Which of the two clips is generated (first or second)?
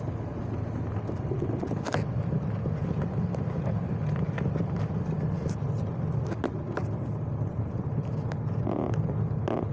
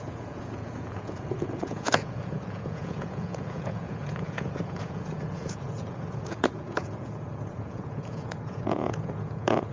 second